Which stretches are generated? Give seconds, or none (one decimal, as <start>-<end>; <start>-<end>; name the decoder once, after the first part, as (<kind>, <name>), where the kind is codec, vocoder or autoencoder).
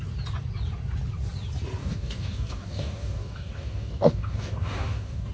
1.8-5.3 (codec, DAC)